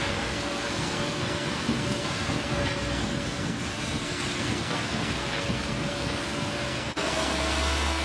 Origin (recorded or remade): remade